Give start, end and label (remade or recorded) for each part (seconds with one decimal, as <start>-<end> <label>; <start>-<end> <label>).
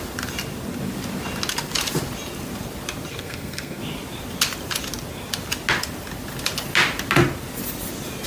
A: 0.0-3.1 recorded; 3.1-3.8 remade; 3.8-8.3 recorded